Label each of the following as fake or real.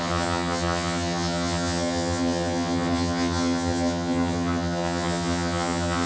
fake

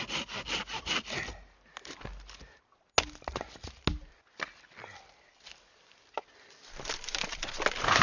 real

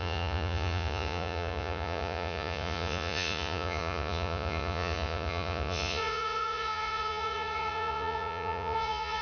fake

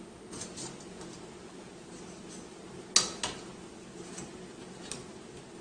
real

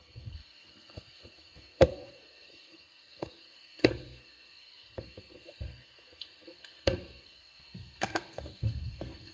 fake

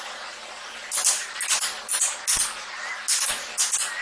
real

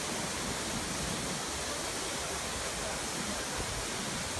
real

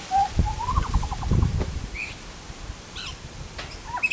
real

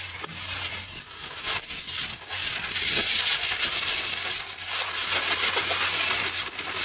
real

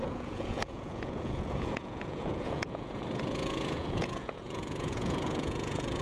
fake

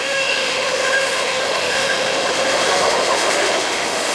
fake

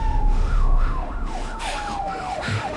fake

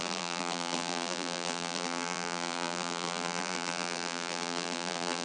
fake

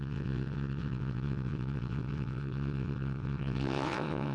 fake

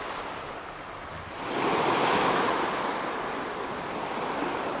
real